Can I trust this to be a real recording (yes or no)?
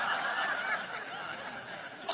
yes